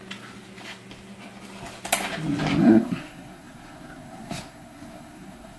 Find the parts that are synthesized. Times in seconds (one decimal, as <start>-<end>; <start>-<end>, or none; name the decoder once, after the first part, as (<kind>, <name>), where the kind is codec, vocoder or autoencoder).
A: 2.6-5.6 (codec, SNAC)